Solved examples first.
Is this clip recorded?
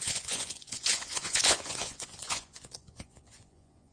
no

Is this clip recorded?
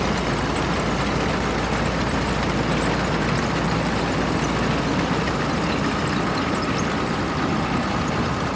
yes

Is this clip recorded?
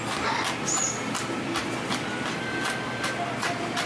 yes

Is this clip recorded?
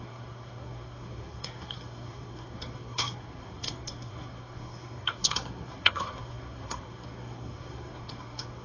no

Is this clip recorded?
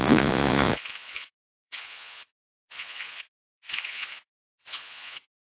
no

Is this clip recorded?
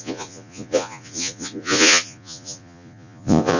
no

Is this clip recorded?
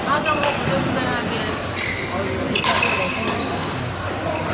yes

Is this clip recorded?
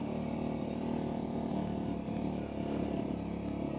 yes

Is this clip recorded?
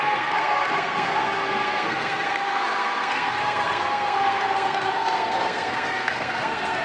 no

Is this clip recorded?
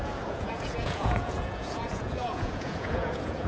no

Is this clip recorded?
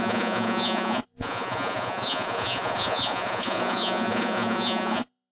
no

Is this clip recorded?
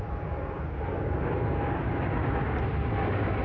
yes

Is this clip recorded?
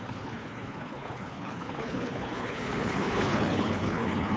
no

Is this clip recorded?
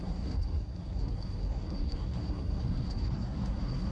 no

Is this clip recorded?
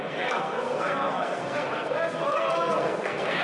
no